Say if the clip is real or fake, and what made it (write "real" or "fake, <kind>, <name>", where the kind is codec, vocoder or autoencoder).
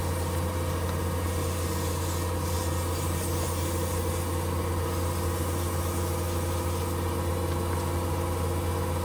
real